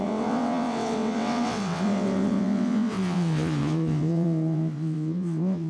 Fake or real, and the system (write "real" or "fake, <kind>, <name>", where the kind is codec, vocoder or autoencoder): fake, vocoder, WaveNeXt